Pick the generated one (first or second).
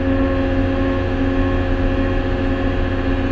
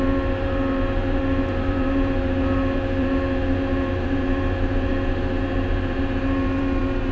second